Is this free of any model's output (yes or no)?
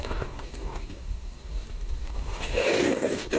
no